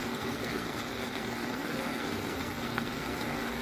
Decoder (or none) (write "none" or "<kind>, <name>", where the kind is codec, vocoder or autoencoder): codec, SNAC